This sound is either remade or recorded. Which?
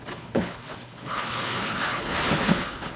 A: remade